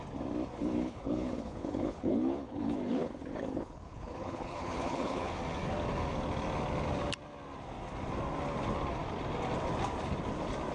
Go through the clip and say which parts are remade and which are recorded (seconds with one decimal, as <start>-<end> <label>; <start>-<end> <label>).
0.0-0.6 recorded; 0.6-5.3 remade; 5.3-10.7 recorded